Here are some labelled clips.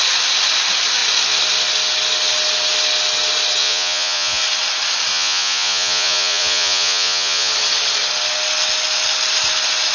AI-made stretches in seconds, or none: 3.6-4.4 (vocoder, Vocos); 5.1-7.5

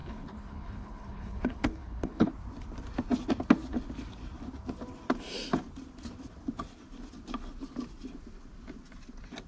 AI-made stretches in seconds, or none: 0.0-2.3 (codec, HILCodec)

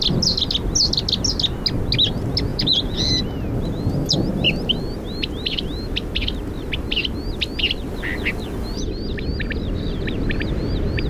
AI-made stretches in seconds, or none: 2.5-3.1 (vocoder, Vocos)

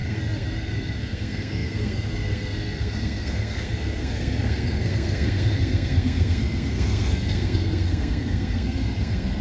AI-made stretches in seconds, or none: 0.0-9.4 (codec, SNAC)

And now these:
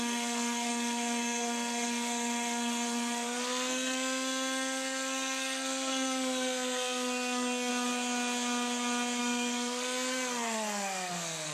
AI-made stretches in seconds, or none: 0.0-7.7 (codec, SNAC); 9.2-11.5

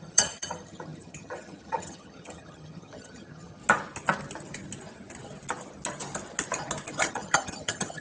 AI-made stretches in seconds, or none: 0.0-3.6 (vocoder, HiFi-GAN); 7.1-8.0

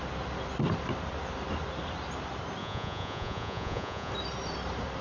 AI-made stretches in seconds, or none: 2.6-4.1 (vocoder, Vocos)